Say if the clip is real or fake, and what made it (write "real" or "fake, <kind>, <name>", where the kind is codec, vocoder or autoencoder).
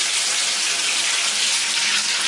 real